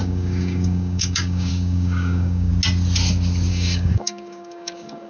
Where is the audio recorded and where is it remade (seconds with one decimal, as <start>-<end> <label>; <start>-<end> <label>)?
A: 0.0-2.5 remade; 2.5-3.5 recorded; 3.5-5.1 remade